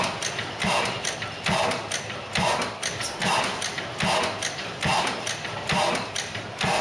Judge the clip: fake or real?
real